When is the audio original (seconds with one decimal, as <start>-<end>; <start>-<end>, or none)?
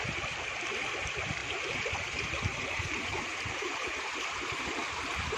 0.0-1.4; 4.6-5.4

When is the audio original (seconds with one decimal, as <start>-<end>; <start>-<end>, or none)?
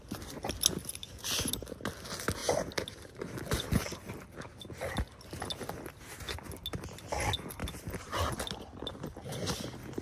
0.0-0.8; 1.7-2.4; 4.2-7.6; 8.4-10.0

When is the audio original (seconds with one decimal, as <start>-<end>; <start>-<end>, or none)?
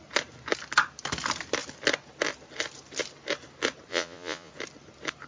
0.0-3.9; 4.5-5.3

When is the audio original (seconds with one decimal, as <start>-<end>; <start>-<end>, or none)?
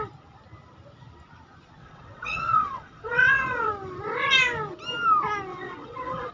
0.0-1.8; 3.7-5.5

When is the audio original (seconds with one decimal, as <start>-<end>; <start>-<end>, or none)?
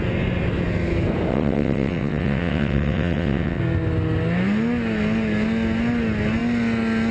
0.0-1.3; 3.6-7.1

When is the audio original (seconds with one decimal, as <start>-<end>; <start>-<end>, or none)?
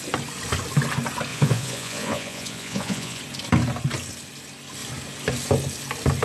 0.0-1.3; 3.2-6.2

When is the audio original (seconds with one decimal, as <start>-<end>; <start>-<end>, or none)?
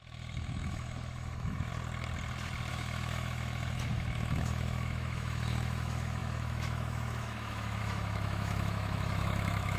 1.7-2.7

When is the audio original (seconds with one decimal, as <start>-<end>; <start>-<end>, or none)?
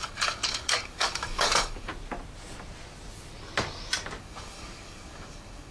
1.9-4.2